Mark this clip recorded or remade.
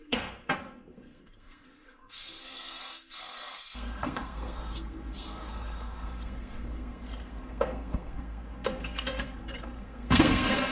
remade